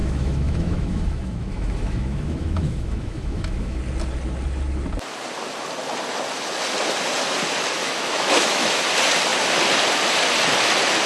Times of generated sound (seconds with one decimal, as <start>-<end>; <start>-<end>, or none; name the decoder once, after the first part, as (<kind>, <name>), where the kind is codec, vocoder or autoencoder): 0.0-3.8 (autoencoder, DAC-VAE); 7.8-8.8